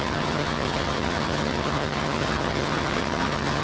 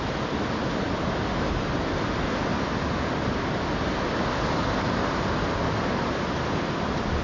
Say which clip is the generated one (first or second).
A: first